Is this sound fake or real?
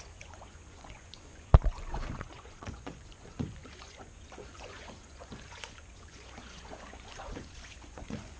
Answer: fake